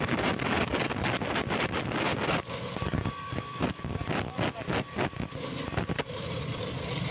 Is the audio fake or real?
fake